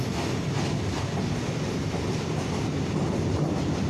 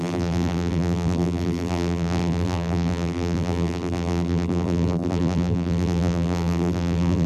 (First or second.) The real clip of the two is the first